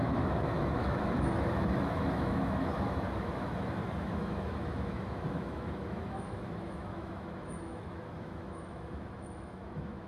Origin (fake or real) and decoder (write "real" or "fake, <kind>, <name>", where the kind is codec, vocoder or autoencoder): fake, autoencoder, DAC-VAE